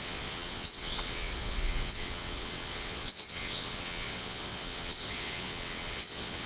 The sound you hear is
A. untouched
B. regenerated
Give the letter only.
B